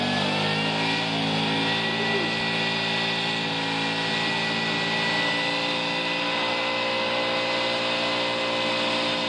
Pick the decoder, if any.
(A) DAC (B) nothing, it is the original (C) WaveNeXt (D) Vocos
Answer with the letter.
B